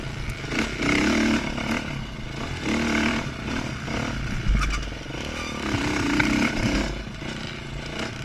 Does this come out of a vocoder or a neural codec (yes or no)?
no